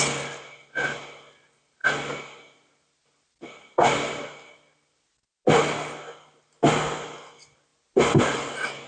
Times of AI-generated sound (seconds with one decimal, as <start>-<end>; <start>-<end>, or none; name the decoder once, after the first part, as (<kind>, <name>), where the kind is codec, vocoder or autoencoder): none